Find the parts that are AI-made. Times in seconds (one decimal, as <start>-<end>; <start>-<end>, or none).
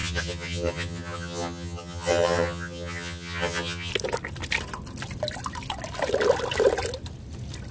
0.0-3.9